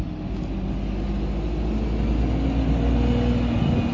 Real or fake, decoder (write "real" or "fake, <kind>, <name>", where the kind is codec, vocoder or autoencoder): real